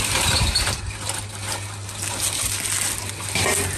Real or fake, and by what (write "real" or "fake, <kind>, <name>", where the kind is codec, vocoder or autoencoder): real